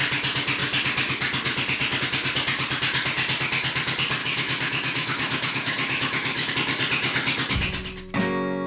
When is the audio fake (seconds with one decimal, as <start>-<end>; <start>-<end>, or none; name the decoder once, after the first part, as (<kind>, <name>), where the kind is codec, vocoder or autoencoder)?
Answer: 4.2-6.5 (autoencoder, DAC-VAE)